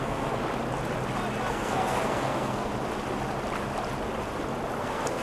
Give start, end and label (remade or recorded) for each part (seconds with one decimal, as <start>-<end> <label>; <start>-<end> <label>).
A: 0.0-0.4 remade; 0.4-1.5 recorded; 1.5-2.7 remade; 2.7-4.8 recorded; 4.8-5.2 remade